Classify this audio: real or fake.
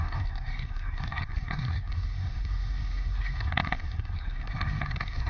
fake